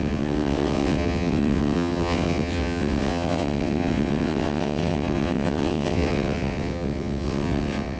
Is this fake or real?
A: fake